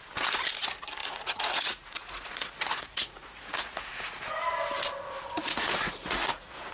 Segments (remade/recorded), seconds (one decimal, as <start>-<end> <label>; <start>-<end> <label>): 0.0-1.0 recorded; 1.0-4.2 remade; 4.2-5.4 recorded; 5.4-6.7 remade